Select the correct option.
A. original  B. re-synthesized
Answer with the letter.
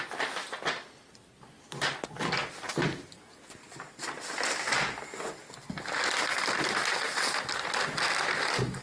A